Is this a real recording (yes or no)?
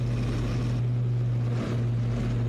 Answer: yes